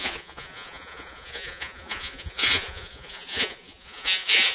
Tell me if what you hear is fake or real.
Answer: fake